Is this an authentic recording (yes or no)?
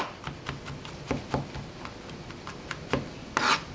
yes